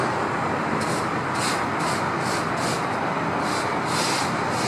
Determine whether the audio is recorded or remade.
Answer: recorded